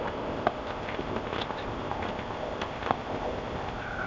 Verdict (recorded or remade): remade